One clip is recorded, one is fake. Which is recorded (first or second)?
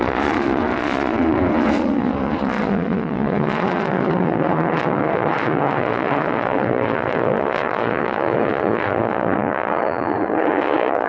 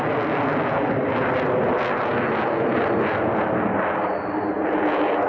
second